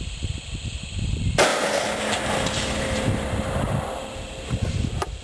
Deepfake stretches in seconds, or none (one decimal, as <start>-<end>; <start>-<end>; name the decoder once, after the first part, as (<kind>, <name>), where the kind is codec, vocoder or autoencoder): 1.5-3.6 (vocoder, BigVGAN v2)